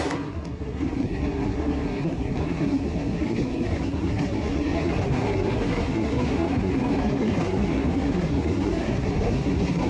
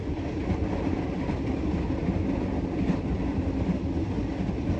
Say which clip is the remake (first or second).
first